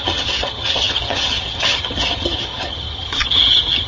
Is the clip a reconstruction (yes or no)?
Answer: yes